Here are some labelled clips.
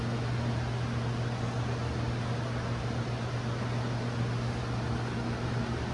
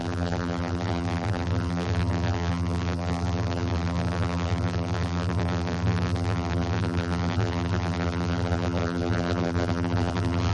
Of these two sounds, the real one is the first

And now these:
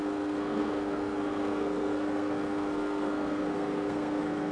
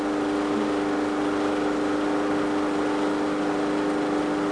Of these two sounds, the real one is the second